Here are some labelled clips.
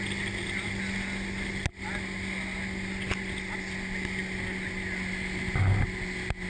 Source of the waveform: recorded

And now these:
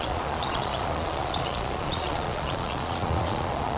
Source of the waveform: remade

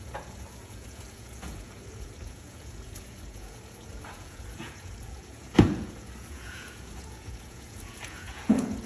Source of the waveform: remade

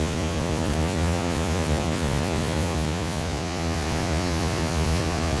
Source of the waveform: remade